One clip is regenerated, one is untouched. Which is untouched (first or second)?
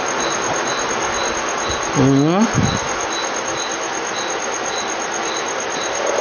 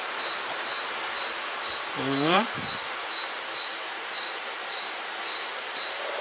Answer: first